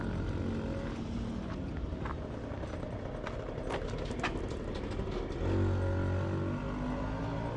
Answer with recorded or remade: recorded